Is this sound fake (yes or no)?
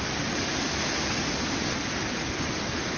no